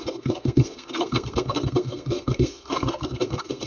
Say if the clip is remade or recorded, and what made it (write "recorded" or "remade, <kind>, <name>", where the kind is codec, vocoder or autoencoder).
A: remade, codec, SNAC